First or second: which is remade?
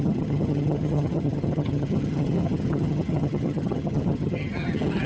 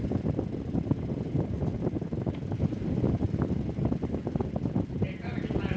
first